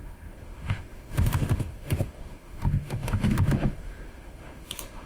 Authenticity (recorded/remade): remade